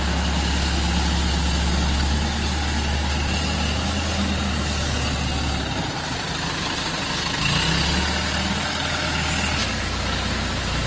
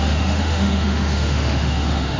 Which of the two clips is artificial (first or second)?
second